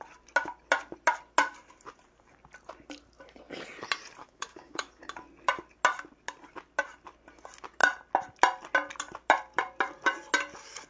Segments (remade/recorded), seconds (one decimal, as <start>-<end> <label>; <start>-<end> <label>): 0.0-4.2 recorded; 4.2-5.0 remade; 5.0-10.9 recorded